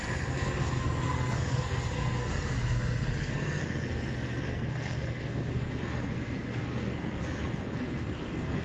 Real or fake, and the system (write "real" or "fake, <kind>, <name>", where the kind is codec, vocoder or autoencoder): fake, codec, SNAC